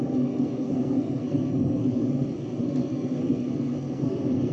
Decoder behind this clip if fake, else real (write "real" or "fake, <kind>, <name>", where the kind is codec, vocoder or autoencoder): fake, codec, SNAC